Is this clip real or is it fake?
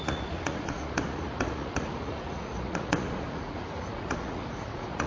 fake